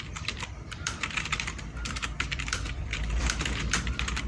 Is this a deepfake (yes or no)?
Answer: yes